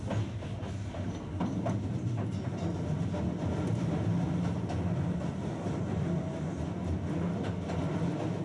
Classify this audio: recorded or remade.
recorded